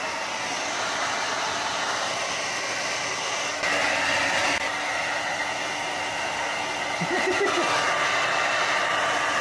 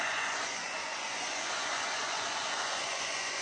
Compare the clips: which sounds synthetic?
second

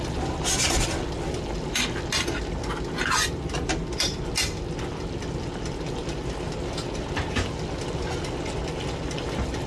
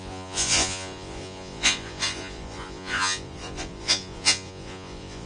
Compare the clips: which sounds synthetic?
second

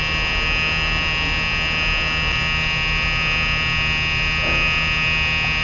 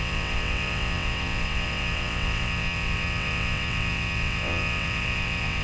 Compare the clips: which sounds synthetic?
second